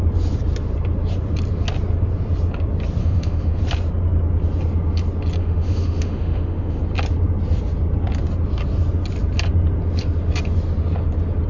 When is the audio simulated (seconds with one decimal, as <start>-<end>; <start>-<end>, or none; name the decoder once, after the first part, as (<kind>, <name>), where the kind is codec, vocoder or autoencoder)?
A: 3.0-3.6 (autoencoder, DAC-VAE); 5.4-6.8